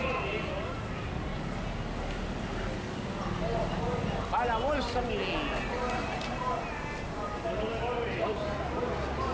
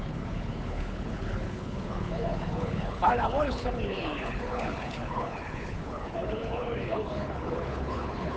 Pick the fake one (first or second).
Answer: second